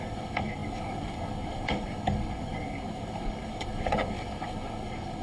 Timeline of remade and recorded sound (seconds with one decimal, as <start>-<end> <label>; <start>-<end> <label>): 0.0-5.2 remade